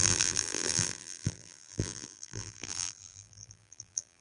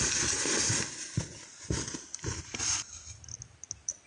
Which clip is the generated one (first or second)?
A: first